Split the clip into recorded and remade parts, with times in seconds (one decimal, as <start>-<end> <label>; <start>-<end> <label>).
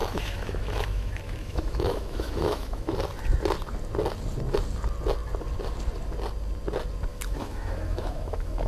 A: 0.0-3.0 remade; 3.0-7.1 recorded; 7.1-8.7 remade